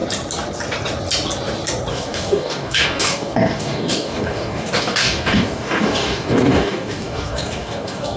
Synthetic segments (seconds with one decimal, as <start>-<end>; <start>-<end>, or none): 1.9-8.2